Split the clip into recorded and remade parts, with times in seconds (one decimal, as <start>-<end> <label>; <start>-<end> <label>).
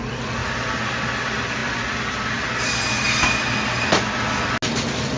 0.0-5.2 recorded